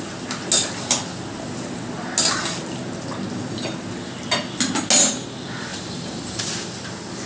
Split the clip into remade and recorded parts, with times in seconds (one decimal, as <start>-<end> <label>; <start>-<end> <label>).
0.0-5.7 recorded; 5.7-6.4 remade; 6.4-7.3 recorded